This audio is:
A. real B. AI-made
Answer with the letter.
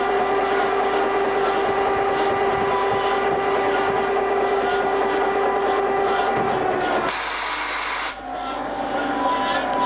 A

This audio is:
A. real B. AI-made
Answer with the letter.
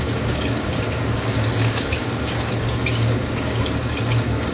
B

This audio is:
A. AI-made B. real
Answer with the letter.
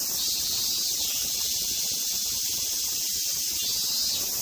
B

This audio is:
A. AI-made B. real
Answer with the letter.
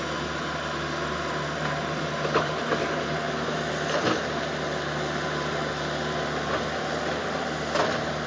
B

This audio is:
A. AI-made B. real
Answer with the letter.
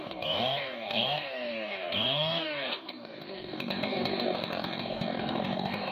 A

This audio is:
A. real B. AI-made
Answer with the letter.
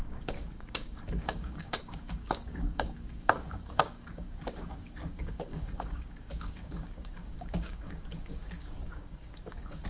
B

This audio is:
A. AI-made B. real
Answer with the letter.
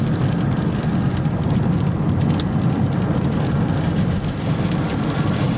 B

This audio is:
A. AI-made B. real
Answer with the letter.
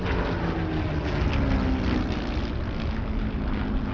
B